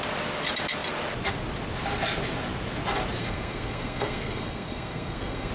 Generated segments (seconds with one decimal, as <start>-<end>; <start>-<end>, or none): 3.2-5.5